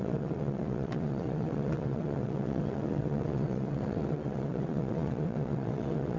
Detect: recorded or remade remade